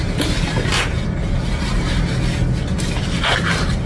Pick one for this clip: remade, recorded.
recorded